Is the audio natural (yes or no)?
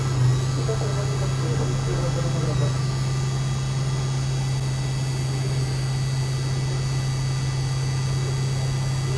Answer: yes